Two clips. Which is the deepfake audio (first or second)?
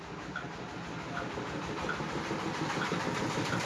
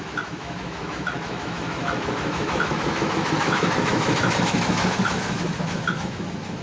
second